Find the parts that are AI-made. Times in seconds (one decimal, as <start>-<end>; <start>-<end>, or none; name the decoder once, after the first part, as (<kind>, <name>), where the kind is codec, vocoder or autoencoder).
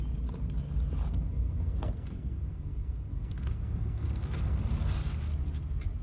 1.1-4.7 (codec, SNAC)